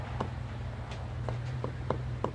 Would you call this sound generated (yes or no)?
yes